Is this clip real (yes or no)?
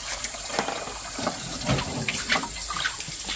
yes